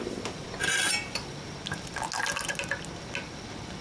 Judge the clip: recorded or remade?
recorded